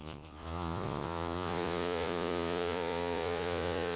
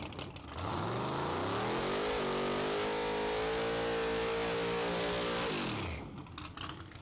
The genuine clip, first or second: second